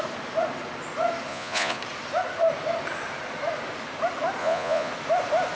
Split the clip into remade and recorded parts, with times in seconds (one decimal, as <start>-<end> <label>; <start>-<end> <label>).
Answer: 0.0-1.3 recorded; 1.3-1.8 remade; 1.8-4.4 recorded; 4.4-4.9 remade; 4.9-5.6 recorded